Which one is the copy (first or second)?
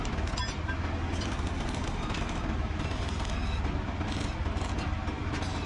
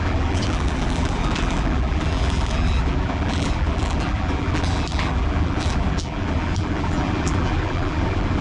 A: second